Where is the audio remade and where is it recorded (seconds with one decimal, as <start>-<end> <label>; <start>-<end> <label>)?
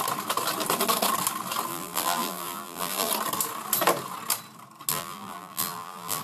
0.0-1.7 recorded; 1.7-3.1 remade; 3.1-4.9 recorded; 4.9-6.2 remade